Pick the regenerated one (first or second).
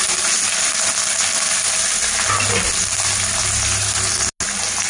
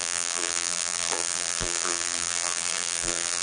second